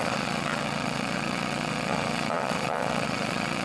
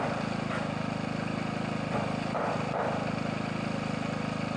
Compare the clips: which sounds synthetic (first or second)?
first